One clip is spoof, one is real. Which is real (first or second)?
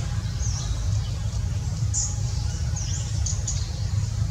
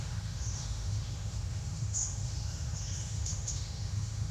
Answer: first